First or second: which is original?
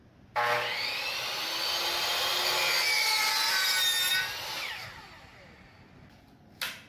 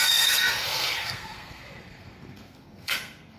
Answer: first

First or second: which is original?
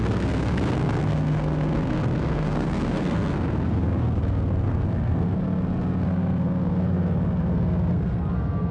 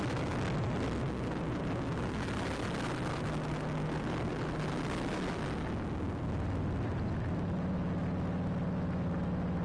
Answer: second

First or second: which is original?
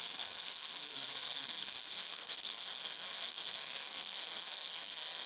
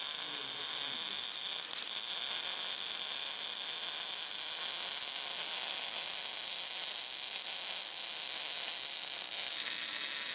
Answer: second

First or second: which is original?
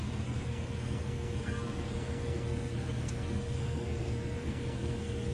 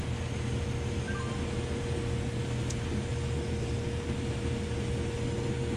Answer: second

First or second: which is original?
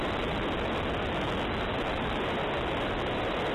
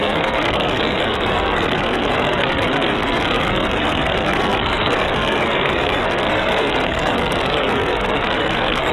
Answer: first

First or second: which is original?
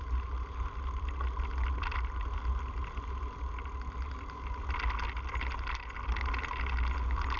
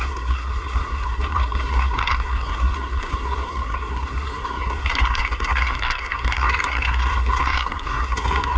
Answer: first